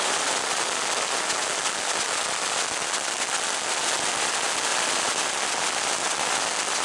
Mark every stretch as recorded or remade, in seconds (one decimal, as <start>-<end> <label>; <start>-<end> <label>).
0.0-4.7 recorded; 4.7-5.3 remade; 5.3-6.8 recorded